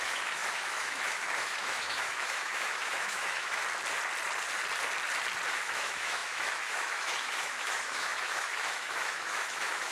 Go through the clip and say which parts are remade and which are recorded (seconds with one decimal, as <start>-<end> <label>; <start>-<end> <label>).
0.0-3.6 remade; 3.6-5.5 recorded; 5.5-9.9 remade